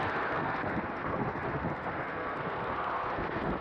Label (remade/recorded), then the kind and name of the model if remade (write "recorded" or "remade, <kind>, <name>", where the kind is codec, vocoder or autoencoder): remade, codec, SNAC